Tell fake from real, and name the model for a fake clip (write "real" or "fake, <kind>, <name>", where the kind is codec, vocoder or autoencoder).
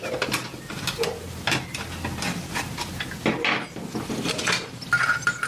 real